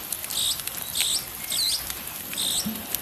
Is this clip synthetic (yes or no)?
no